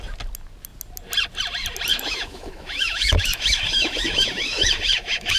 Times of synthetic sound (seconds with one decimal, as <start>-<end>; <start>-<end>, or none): 1.9-5.4